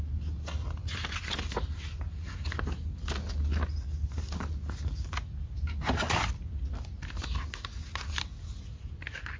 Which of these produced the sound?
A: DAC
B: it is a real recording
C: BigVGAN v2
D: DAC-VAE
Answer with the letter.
B